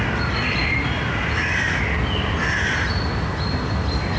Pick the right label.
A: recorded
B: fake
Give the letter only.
A